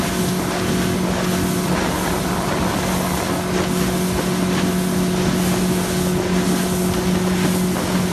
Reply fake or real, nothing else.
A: real